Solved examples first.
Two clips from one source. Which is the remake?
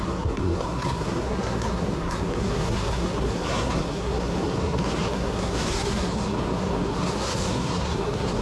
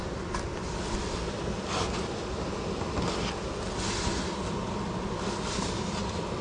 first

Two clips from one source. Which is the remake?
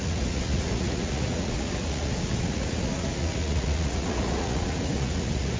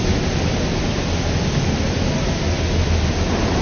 first